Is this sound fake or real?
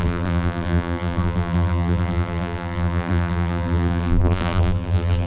fake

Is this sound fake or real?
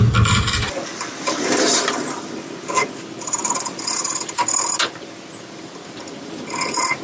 real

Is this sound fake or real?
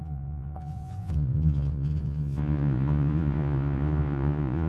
fake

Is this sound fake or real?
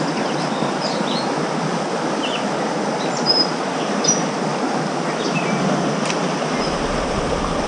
real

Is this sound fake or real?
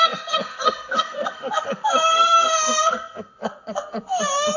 fake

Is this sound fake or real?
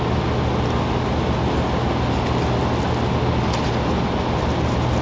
real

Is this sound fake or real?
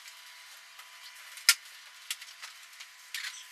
real